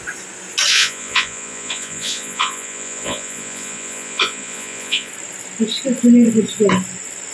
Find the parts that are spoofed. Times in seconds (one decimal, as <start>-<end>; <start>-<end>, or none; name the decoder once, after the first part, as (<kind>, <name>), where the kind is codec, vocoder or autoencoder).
0.7-5.1 (vocoder, Vocos)